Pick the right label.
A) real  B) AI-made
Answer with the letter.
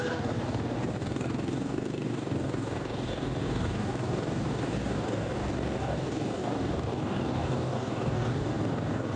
B